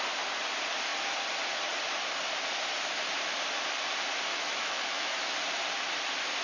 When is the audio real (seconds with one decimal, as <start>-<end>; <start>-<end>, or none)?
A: 0.0-4.3; 5.2-6.4